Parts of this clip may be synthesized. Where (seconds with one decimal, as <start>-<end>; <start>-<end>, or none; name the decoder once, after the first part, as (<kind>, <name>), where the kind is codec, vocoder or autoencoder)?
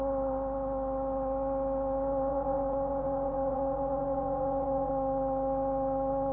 2.3-4.9 (vocoder, Vocos)